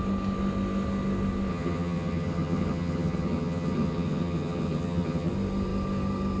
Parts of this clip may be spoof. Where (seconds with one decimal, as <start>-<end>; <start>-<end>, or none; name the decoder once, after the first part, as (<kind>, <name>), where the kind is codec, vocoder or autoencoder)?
1.5-5.3 (vocoder, HiFi-GAN)